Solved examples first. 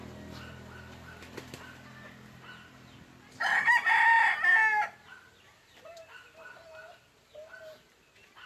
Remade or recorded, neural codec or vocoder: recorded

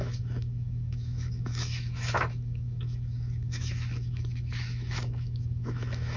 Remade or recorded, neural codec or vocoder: remade, autoencoder, DAC-VAE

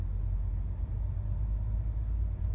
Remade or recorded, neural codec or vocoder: recorded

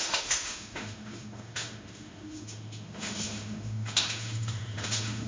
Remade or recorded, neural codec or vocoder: remade, autoencoder, DAC-VAE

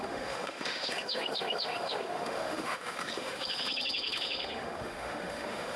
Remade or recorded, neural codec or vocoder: remade, autoencoder, DAC-VAE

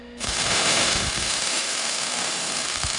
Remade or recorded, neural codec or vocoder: remade, autoencoder, DAC-VAE